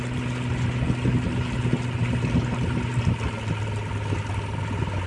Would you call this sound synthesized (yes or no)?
no